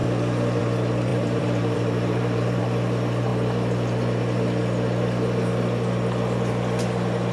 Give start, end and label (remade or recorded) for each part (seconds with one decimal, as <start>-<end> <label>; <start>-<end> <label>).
0.0-1.1 recorded; 1.1-2.6 remade; 2.6-7.3 recorded